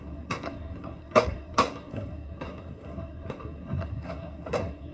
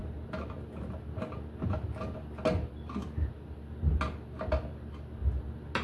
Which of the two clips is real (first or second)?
second